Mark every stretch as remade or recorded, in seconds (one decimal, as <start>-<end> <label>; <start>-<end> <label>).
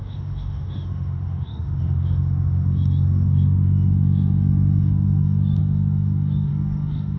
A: 0.0-7.2 remade